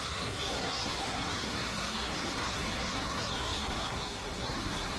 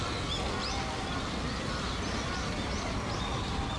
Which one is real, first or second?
second